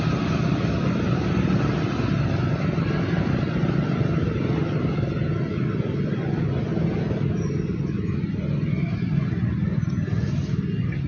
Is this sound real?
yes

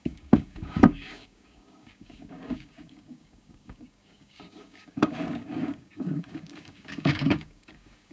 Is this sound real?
no